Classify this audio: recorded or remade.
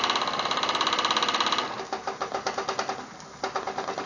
recorded